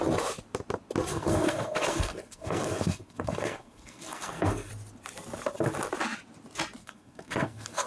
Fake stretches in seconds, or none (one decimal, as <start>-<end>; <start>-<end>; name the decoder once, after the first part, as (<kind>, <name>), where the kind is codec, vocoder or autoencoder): 1.1-4.7 (codec, SNAC); 6.8-7.9